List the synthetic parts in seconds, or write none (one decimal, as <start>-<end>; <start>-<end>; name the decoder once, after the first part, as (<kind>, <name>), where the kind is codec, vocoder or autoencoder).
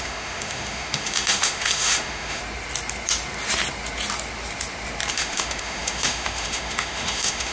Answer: 0.0-2.4 (autoencoder, DAC-VAE); 5.1-7.5